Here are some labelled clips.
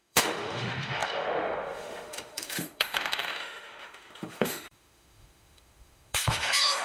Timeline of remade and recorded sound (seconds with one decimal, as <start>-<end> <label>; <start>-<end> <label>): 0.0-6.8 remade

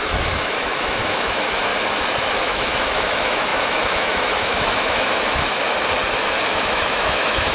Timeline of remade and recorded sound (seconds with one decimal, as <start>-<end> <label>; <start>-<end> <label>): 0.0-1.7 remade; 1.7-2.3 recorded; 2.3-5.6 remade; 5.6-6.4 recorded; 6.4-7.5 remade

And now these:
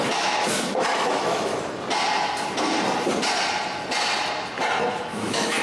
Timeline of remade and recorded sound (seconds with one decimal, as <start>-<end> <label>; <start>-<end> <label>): 0.0-1.5 remade; 1.5-4.9 recorded; 4.9-5.6 remade